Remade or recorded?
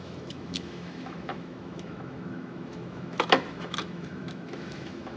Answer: remade